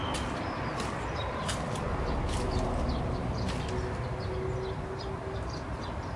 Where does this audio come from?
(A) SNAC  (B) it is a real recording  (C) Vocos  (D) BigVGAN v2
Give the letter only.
B